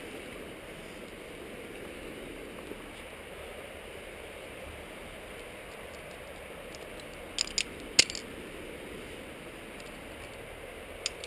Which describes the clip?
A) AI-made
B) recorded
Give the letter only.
B